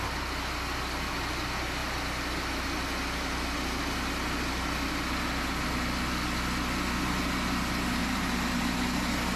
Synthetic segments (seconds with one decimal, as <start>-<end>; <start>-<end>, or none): 8.0-9.0